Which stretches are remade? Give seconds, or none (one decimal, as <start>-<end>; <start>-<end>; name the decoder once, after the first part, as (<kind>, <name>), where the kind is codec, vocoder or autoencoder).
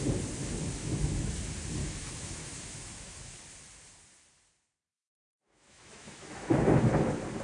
0.8-1.3 (autoencoder, DAC-VAE); 1.8-3.3; 4.9-6.9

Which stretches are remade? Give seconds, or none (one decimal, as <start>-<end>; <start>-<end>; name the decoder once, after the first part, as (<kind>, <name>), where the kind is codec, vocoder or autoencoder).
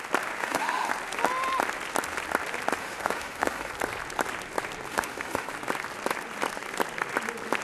0.4-0.9 (autoencoder, DAC-VAE); 2.8-3.7; 4.9-5.5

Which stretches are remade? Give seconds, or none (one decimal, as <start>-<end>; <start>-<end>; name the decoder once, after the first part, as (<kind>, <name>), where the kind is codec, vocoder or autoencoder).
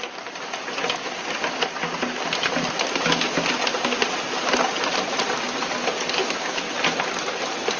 6.2-6.7 (autoencoder, DAC-VAE)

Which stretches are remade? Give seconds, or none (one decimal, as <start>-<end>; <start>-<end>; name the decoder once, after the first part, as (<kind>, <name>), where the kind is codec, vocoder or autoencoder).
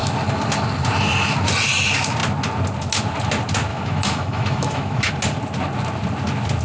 3.7-5.1 (autoencoder, DAC-VAE)